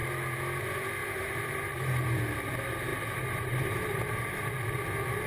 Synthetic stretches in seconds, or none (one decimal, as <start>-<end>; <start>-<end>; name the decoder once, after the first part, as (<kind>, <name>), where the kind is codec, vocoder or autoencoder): 1.0-2.2 (vocoder, BigVGAN v2); 2.9-4.4